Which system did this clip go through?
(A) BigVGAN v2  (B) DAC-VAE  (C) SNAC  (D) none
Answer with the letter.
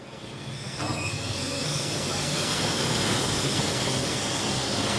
C